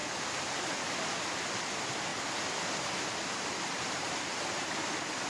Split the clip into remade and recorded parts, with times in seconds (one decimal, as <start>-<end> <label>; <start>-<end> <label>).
0.0-5.3 recorded